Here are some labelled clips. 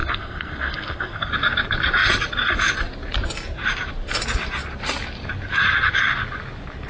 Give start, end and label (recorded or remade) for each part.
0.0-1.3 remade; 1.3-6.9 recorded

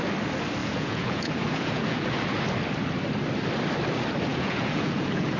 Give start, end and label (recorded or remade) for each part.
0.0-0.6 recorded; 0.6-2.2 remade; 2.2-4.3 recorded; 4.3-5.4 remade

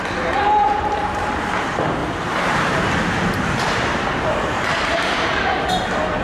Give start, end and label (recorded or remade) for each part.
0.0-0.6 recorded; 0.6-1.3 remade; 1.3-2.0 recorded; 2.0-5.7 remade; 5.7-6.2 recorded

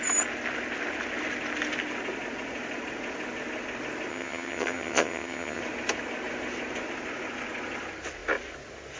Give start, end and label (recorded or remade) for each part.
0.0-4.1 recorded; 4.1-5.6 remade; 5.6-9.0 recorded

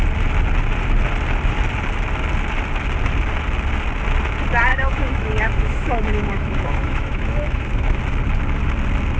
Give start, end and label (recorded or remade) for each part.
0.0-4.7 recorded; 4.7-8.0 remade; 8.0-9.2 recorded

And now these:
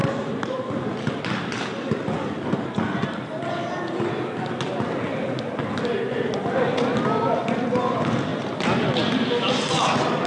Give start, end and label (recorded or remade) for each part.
0.0-10.3 recorded